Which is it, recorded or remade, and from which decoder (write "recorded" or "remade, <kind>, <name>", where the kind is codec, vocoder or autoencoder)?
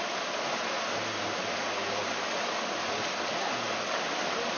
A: recorded